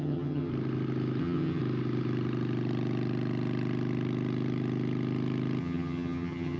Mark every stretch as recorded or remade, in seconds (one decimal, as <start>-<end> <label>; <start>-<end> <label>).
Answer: 0.0-0.5 remade; 0.5-1.2 recorded; 1.2-1.6 remade; 1.6-5.6 recorded; 5.6-6.6 remade